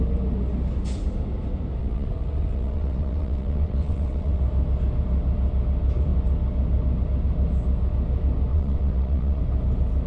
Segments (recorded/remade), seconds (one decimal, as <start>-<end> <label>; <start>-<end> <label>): 0.0-1.8 recorded; 1.8-4.4 remade; 4.4-8.5 recorded; 8.5-9.4 remade; 9.4-10.1 recorded